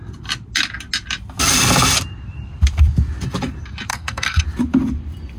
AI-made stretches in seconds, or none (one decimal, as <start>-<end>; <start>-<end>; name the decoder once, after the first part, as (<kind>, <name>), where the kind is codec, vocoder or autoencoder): 3.9-4.4 (codec, SNAC)